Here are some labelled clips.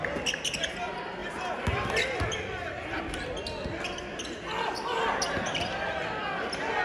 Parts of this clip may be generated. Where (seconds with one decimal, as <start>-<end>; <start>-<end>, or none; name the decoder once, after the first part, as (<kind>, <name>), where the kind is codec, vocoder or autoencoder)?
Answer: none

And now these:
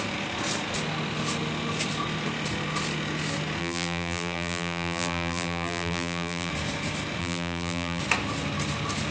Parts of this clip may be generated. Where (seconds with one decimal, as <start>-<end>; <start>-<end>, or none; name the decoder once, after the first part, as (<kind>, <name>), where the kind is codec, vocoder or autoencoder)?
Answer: 3.6-6.5 (vocoder, BigVGAN v2); 7.2-8.0

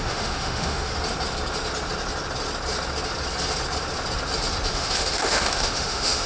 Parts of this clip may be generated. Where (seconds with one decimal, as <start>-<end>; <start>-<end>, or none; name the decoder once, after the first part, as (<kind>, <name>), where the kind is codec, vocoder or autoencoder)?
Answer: 0.0-0.9 (autoencoder, DAC-VAE); 4.7-6.3

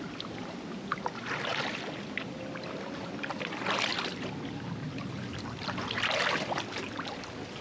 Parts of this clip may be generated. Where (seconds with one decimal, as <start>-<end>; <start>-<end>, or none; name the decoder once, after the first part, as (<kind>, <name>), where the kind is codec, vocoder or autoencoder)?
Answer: none